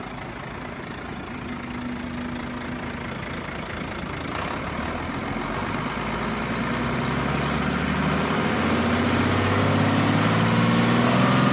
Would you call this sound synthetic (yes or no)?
no